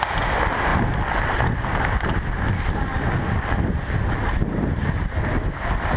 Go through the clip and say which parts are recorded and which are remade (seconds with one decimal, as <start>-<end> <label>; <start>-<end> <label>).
0.0-6.0 recorded